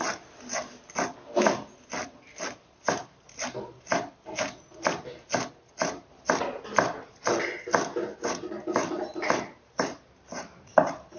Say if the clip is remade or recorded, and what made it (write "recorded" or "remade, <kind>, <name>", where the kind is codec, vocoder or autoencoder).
recorded